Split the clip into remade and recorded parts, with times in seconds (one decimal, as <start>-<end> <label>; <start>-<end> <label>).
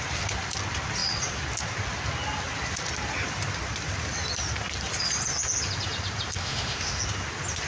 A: 0.0-6.4 recorded; 6.4-7.0 remade; 7.0-7.7 recorded